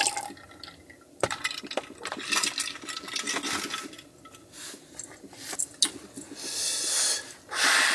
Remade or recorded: recorded